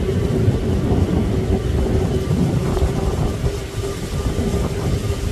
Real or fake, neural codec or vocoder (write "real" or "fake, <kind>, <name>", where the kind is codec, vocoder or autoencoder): real